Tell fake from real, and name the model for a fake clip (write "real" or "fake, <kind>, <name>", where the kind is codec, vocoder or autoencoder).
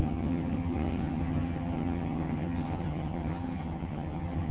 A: fake, vocoder, HiFi-GAN